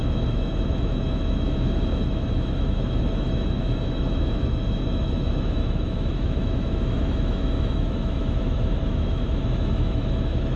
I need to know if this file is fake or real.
fake